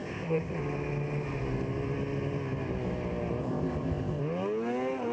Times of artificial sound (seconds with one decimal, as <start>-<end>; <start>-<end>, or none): 0.0-0.6; 3.4-4.2